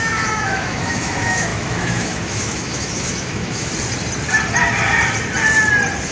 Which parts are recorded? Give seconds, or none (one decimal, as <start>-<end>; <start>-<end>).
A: 3.7-6.1